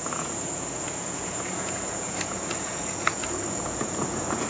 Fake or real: fake